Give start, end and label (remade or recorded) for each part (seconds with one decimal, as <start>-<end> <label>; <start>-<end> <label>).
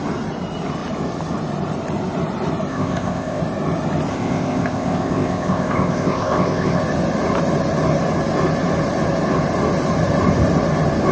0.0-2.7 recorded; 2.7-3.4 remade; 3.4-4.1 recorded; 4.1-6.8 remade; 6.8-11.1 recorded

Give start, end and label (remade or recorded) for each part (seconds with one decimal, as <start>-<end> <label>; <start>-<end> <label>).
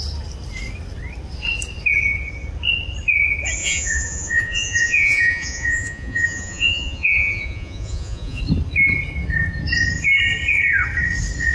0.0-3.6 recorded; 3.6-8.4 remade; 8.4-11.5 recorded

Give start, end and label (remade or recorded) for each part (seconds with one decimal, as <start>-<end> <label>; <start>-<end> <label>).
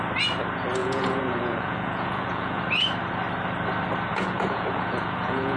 0.0-0.8 recorded; 0.8-2.6 remade; 2.6-4.1 recorded; 4.1-5.6 remade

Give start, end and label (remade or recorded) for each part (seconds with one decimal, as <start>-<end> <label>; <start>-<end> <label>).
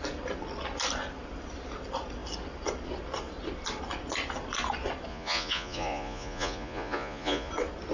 0.0-5.1 recorded; 5.1-7.5 remade; 7.5-7.9 recorded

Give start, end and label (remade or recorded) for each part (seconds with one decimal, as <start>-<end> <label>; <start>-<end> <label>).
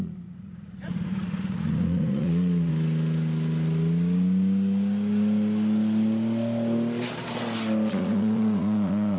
0.0-2.7 remade; 2.7-7.9 recorded; 7.9-9.2 remade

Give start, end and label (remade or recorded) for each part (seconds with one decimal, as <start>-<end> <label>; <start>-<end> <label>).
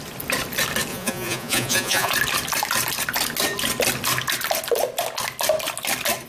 0.0-0.9 recorded; 0.9-2.1 remade; 2.1-6.3 recorded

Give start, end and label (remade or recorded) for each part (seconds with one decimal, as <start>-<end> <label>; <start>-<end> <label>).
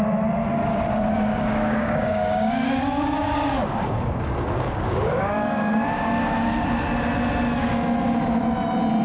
0.0-1.3 recorded; 1.3-6.5 remade; 6.5-9.0 recorded